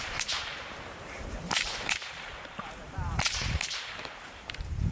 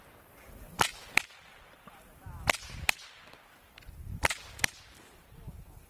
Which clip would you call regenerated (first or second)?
first